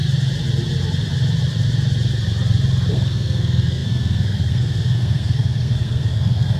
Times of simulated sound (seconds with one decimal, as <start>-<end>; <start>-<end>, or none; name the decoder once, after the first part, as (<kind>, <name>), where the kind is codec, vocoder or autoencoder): 2.9-6.6 (codec, SNAC)